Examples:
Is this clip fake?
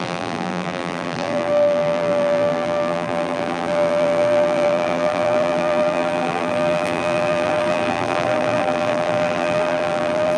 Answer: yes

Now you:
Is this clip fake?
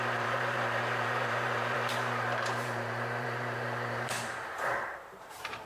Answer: yes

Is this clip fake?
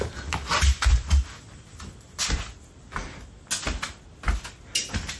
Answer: no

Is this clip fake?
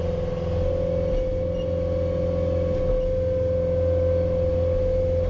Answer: no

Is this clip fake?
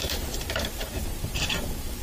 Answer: yes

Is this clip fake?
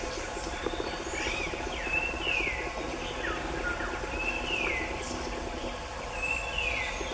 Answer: no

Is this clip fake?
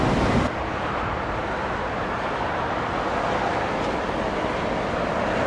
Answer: no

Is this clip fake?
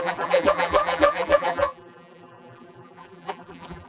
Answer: yes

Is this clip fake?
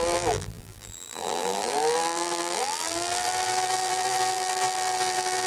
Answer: yes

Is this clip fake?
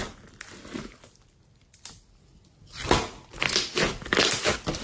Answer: no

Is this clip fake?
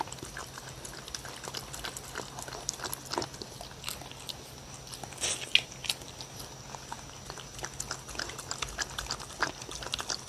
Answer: no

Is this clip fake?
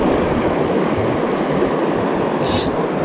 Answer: no